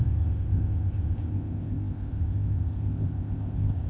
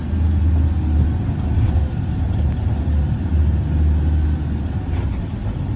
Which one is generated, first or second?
first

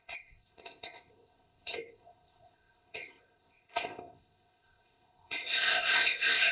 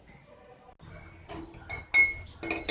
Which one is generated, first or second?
first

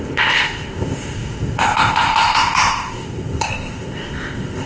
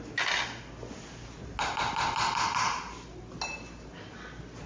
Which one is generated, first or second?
first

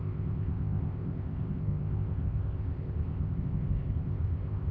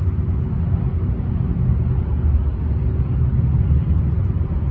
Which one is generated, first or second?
first